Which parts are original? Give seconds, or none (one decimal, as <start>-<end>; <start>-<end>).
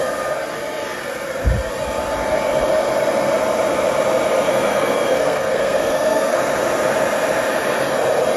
0.0-4.5; 6.4-8.4